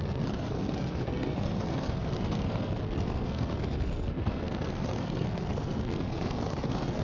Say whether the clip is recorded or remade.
remade